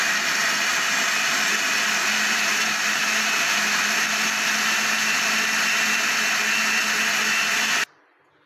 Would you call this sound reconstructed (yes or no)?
no